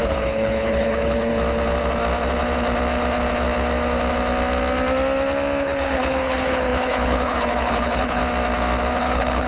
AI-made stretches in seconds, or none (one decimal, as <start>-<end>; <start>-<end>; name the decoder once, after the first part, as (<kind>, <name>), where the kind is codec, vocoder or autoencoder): 0.0-1.3 (codec, HILCodec); 5.6-8.2; 9.0-9.5